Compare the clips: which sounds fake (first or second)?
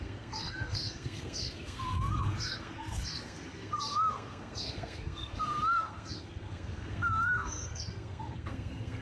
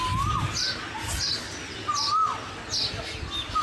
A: first